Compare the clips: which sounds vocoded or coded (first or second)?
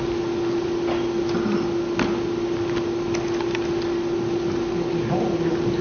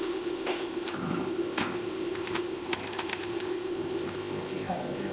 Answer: second